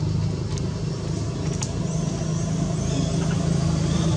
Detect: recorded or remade recorded